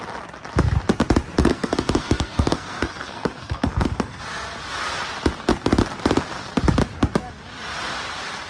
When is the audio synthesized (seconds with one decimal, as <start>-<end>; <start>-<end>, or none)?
1.4-4.2